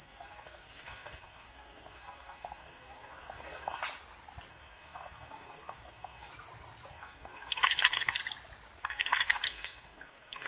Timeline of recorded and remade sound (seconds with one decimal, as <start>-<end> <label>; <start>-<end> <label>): 0.0-3.8 remade; 3.8-4.5 recorded; 4.5-6.3 remade; 6.3-6.9 recorded; 6.9-8.2 remade; 8.2-8.8 recorded; 8.8-10.5 remade